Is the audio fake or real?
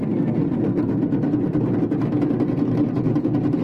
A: real